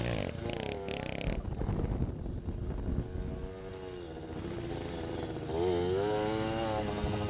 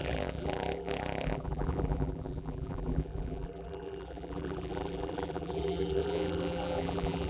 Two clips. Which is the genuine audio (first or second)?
first